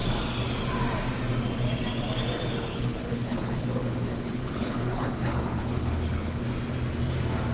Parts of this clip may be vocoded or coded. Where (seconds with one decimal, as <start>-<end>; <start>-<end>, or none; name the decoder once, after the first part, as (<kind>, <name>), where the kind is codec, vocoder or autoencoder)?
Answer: 2.7-6.4 (codec, HILCodec)